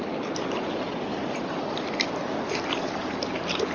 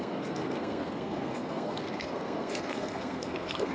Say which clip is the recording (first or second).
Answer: first